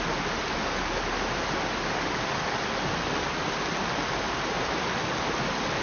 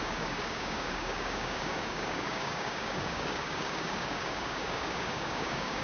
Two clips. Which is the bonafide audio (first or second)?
first